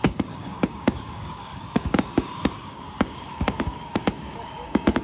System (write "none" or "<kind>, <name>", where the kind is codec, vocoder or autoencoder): codec, DAC